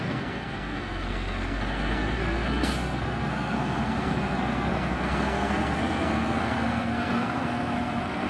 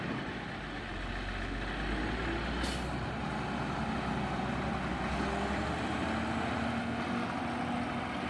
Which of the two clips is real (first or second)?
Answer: second